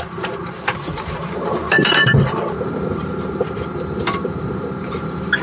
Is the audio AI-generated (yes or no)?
yes